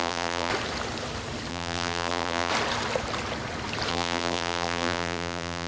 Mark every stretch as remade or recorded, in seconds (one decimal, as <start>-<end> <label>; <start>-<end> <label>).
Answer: 0.0-0.5 remade; 0.5-1.5 recorded; 1.5-2.5 remade; 2.5-3.9 recorded; 3.9-5.7 remade